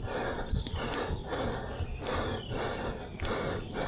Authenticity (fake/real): real